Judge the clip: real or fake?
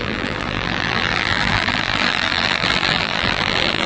fake